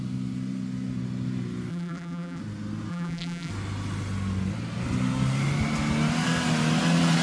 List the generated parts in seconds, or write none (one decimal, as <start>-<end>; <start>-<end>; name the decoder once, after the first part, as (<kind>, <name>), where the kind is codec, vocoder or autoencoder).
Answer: 1.7-2.4 (vocoder, BigVGAN v2); 2.9-3.5